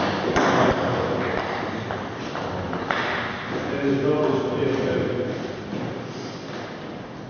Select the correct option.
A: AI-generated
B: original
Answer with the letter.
B